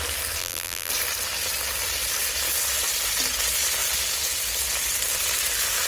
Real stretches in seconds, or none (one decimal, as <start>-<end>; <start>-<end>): 0.0-0.4; 0.9-5.9